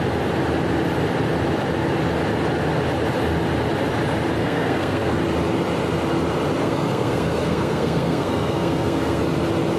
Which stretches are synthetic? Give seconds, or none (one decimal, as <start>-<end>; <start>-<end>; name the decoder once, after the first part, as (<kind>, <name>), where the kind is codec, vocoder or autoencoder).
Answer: 4.4-5.2 (codec, SNAC); 6.6-9.2